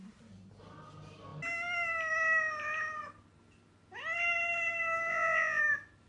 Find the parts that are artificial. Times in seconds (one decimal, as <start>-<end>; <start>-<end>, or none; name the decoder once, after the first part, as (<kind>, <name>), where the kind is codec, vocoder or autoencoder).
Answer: 5.1-5.6 (vocoder, Vocos)